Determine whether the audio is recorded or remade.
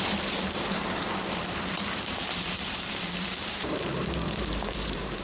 remade